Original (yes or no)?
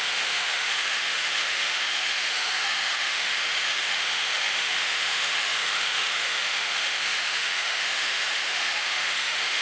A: no